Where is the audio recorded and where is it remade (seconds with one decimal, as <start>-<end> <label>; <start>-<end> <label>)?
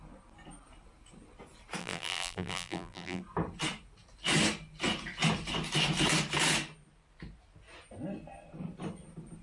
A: 0.0-1.8 recorded; 1.8-3.2 remade; 3.2-9.4 recorded